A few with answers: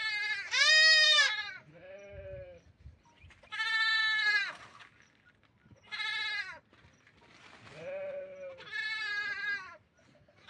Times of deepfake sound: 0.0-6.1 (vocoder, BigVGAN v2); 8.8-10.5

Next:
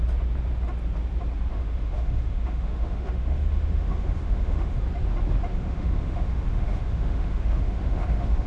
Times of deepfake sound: 1.5-4.8 (autoencoder, DAC-VAE); 5.5-8.5

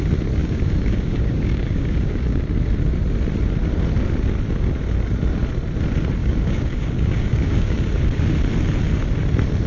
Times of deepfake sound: 0.4-2.4 (codec, DAC); 6.2-8.3

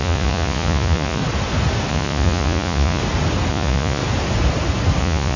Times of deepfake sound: 0.0-1.2 (vocoder, Vocos); 1.9-3.0; 3.5-4.0; 5.0-5.4

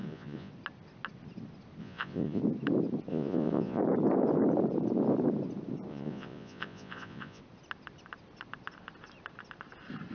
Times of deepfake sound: 0.0-0.5 (vocoder, Vocos); 1.8-2.4; 3.1-3.8; 5.9-7.4

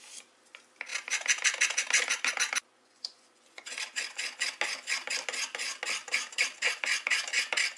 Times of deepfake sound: 2.7-4.4 (vocoder, Vocos)

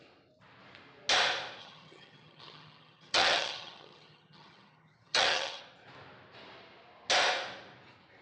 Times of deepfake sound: 1.6-5.6 (vocoder, HiFi-GAN)